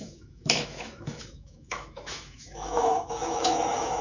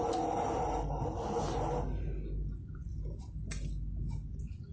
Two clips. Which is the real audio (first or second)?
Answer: second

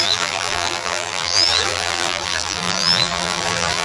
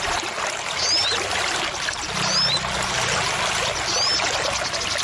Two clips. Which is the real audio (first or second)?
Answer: second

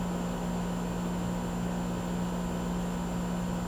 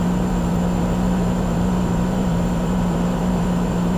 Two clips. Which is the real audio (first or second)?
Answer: first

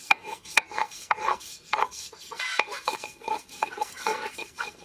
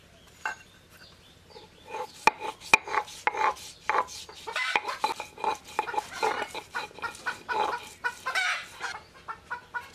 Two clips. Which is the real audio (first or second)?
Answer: second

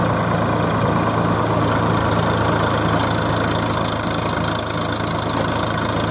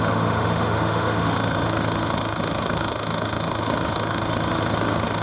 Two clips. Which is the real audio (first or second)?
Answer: first